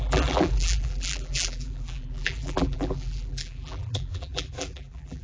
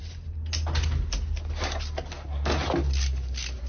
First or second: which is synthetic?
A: first